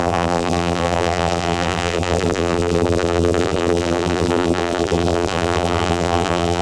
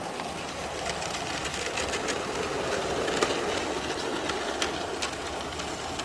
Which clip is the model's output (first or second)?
first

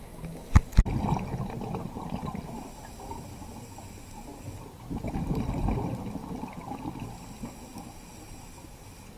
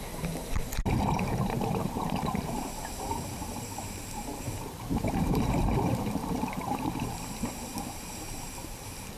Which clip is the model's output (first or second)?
second